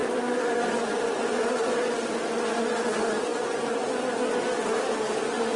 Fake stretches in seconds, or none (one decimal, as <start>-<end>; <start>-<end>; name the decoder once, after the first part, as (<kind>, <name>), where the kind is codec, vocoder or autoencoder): none